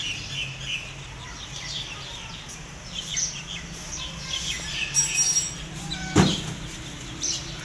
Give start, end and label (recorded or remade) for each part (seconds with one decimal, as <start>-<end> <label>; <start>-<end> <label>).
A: 0.0-2.1 recorded; 2.1-2.8 remade; 2.8-7.6 recorded